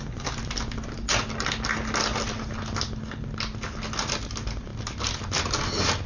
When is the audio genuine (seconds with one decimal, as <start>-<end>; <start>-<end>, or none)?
0.0-6.1